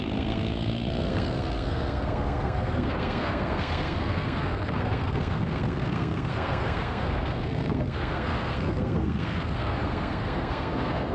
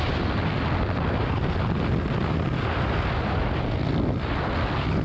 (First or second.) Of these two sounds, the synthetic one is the first